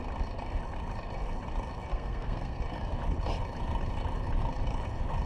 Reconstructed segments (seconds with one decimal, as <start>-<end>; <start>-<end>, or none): 1.9-2.6